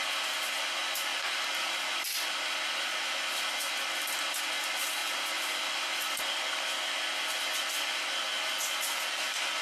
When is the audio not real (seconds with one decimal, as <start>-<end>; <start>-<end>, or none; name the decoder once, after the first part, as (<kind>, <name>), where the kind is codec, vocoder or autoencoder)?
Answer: 1.1-1.9 (vocoder, BigVGAN v2); 2.9-4.5; 5.0-9.6